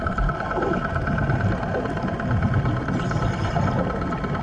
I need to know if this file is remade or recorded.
recorded